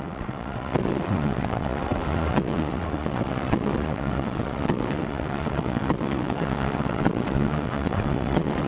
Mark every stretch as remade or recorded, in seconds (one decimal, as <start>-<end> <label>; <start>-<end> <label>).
0.0-8.7 remade